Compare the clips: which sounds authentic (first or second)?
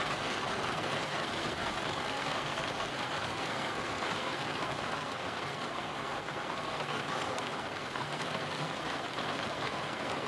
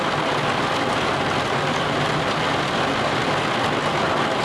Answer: second